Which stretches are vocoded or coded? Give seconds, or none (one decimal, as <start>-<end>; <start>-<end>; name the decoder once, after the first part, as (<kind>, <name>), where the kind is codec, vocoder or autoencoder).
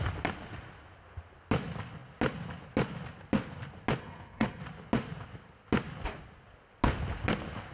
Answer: 4.0-4.6 (codec, SNAC)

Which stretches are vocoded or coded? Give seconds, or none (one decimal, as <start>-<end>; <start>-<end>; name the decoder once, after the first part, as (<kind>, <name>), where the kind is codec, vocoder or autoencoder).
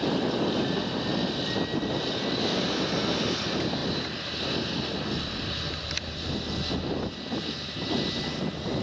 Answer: none